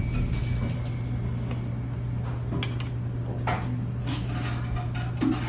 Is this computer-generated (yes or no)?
no